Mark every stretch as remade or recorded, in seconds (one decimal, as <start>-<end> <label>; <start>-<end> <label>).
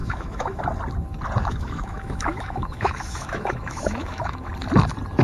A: 0.0-0.6 remade; 0.6-1.4 recorded; 1.4-4.5 remade; 4.5-5.2 recorded